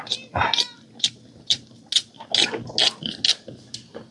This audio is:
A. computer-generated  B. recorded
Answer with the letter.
B